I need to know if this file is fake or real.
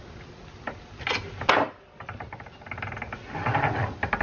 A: real